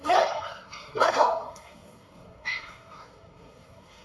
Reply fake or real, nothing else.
fake